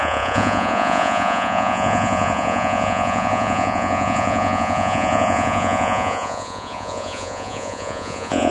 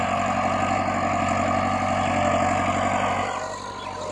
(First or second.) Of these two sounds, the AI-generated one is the first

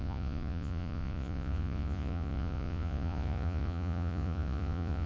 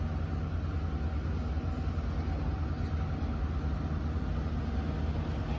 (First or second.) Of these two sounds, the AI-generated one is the first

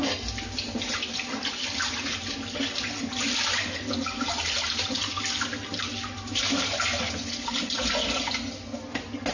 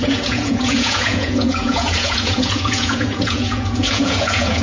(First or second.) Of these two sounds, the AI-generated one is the second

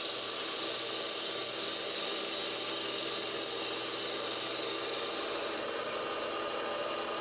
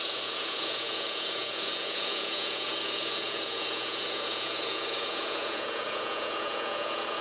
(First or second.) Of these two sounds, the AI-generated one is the second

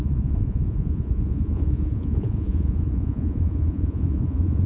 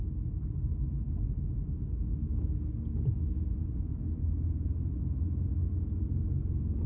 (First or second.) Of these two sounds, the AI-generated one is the first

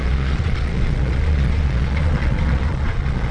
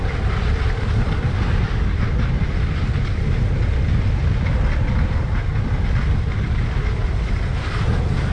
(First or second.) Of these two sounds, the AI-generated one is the first